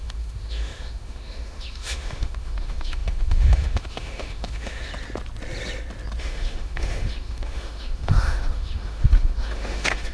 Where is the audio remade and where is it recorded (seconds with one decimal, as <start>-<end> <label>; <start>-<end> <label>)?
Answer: 0.0-4.9 remade; 4.9-6.2 recorded; 6.2-10.1 remade